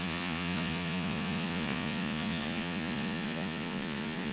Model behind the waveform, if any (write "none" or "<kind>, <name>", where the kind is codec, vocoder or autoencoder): vocoder, Vocos